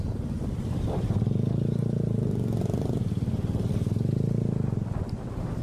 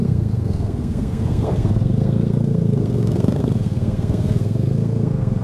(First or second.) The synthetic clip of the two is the second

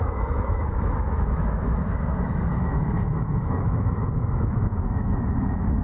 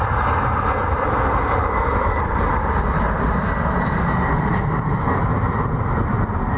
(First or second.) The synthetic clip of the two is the first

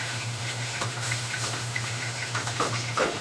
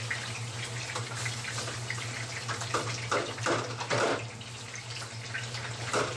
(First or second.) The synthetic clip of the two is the first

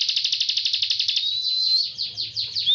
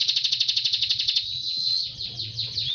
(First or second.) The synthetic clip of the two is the second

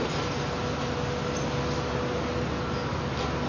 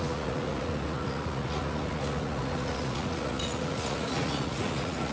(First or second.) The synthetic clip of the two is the second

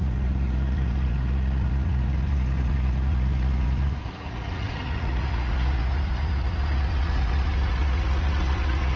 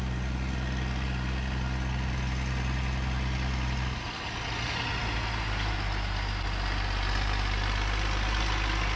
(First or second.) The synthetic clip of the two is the first